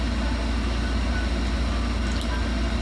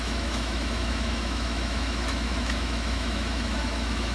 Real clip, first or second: first